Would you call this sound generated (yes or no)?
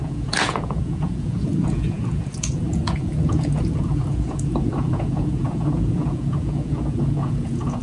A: yes